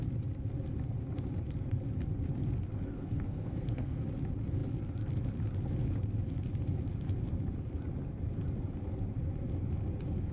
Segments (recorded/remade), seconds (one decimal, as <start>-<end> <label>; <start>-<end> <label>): 0.0-3.0 recorded; 3.0-4.0 remade; 4.0-10.3 recorded